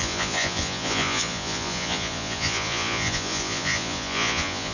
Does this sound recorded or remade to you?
remade